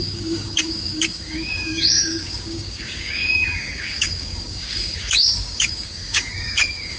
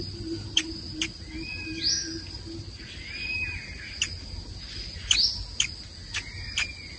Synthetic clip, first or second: first